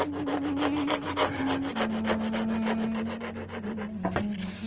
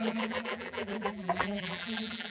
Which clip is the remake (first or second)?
second